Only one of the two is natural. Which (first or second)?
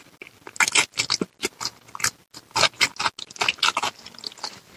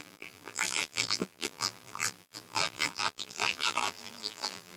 first